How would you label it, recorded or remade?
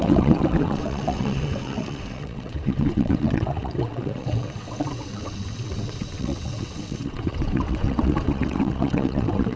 remade